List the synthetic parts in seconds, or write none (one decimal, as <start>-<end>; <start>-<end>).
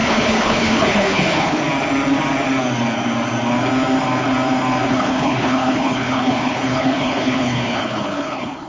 0.0-1.6; 4.9-8.7